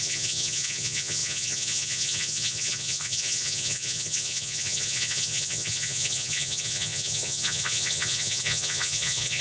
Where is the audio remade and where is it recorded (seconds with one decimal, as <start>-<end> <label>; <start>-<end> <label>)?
0.0-9.4 remade